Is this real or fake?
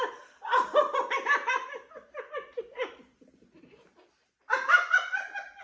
fake